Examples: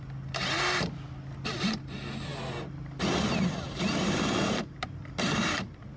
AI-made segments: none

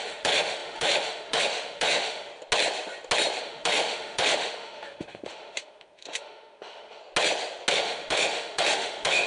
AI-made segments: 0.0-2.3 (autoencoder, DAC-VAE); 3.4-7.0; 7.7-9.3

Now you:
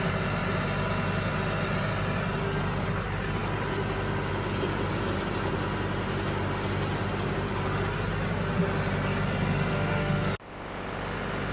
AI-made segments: 9.7-10.3 (autoencoder, DAC-VAE)

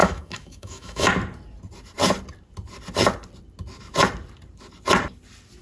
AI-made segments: 0.0-1.1 (autoencoder, DAC-VAE)

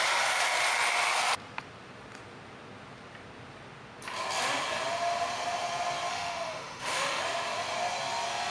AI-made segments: 6.1-7.2 (autoencoder, DAC-VAE)